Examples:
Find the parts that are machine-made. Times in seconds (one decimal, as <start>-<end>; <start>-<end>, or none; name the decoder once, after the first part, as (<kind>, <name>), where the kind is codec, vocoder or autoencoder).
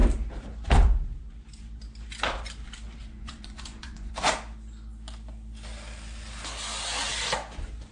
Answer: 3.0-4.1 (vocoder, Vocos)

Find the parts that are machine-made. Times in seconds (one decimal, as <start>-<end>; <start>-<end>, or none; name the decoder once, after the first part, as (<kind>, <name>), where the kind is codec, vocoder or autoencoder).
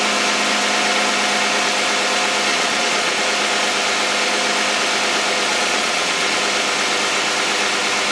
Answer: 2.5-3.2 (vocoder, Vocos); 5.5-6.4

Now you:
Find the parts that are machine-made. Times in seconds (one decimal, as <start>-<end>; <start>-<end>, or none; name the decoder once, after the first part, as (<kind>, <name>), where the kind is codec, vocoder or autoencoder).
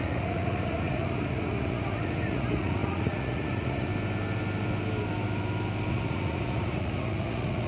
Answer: 0.0-3.9 (vocoder, Vocos); 5.9-7.7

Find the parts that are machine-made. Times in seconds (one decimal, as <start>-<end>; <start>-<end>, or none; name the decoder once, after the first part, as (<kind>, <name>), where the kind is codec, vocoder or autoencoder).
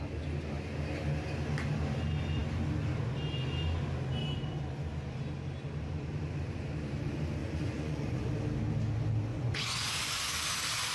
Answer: 7.4-8.3 (vocoder, Vocos); 9.3-10.2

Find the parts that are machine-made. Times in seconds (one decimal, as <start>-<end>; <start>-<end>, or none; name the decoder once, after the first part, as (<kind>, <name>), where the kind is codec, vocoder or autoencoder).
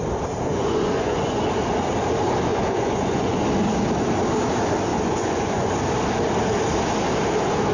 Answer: 0.5-1.4 (vocoder, Vocos); 2.5-3.4; 4.9-5.7